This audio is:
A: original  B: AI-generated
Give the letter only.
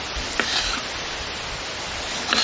A